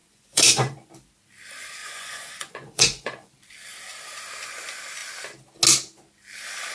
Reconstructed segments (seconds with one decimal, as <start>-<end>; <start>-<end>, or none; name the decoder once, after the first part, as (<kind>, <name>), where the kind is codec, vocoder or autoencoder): 0.0-0.9 (vocoder, Vocos); 1.8-3.3